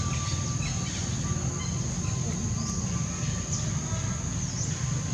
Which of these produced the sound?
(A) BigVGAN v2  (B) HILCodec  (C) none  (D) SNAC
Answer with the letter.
C